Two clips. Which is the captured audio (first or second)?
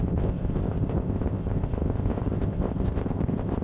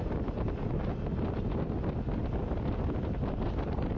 second